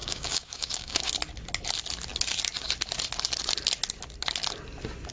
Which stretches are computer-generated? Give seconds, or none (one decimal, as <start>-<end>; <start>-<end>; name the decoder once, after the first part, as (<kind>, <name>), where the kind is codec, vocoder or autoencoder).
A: 0.0-1.1 (codec, DAC)

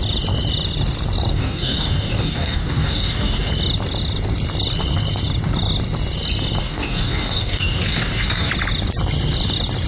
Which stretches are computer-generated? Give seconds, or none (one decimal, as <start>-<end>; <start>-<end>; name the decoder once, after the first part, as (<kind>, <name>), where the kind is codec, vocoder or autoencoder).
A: 1.3-3.5 (codec, DAC); 6.6-8.5

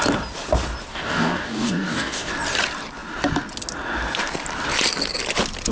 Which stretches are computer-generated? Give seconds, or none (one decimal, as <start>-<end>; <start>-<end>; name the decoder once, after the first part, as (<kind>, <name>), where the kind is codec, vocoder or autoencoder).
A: 0.9-2.3 (codec, DAC)

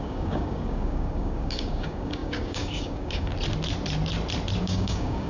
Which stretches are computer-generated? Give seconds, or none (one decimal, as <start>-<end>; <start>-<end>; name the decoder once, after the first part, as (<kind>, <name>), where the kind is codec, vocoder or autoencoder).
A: 0.0-3.3 (codec, DAC); 4.6-5.3

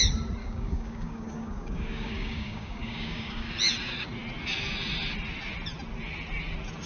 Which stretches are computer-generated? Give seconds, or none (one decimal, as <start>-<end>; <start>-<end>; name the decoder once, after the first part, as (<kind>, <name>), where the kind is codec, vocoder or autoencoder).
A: 0.4-3.5 (codec, DAC)